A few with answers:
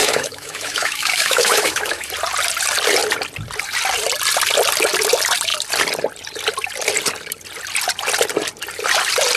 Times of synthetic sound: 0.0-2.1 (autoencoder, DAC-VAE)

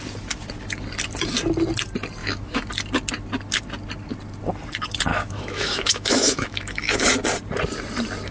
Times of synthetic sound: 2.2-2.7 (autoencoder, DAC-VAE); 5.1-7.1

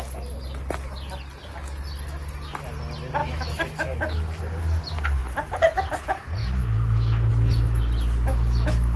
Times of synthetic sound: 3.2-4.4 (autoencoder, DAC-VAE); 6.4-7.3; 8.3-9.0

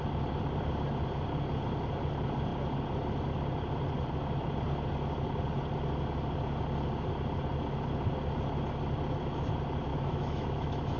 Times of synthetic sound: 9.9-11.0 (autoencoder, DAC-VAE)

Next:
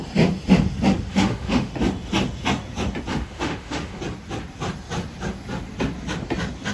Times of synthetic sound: 1.1-1.7 (autoencoder, DAC-VAE); 3.1-4.0

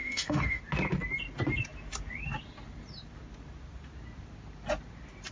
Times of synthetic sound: 0.0-0.6 (autoencoder, DAC-VAE)